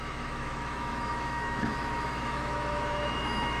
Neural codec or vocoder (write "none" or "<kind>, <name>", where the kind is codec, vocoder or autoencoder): autoencoder, DAC-VAE